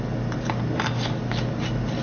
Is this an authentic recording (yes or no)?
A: yes